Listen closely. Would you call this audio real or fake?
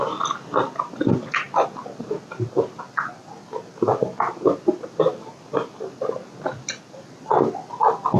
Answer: real